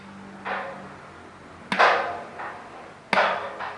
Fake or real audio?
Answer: real